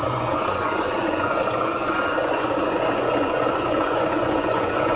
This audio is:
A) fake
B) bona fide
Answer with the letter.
A